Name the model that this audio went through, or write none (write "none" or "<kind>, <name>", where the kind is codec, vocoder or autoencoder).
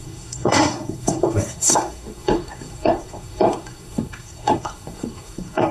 codec, SNAC